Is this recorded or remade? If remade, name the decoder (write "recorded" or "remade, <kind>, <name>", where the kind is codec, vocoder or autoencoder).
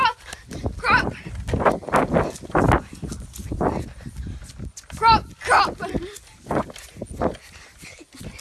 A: recorded